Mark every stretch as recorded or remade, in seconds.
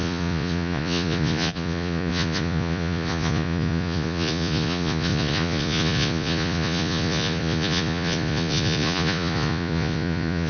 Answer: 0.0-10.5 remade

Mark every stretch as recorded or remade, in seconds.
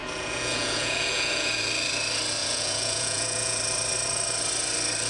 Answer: 0.0-1.6 remade; 1.6-2.4 recorded; 2.4-3.6 remade; 3.6-5.1 recorded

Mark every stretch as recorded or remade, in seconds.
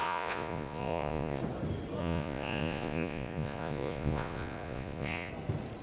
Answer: 0.0-1.4 remade; 1.4-2.0 recorded; 2.0-5.3 remade; 5.3-5.8 recorded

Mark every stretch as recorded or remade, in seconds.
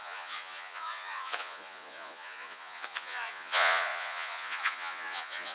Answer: 0.0-5.5 remade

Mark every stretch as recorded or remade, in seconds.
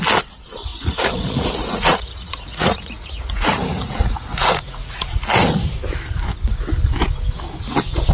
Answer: 0.0-0.7 recorded; 0.7-5.2 remade; 5.2-8.1 recorded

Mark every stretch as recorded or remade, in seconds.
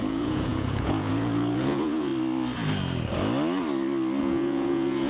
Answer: 0.0-2.1 remade; 2.1-4.2 recorded; 4.2-5.1 remade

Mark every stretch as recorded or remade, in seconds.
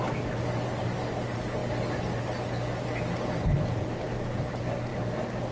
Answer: 0.0-5.5 recorded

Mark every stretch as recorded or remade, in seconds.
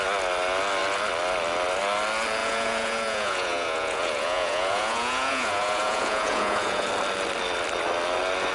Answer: 0.0-2.4 recorded; 2.4-6.9 remade; 6.9-8.5 recorded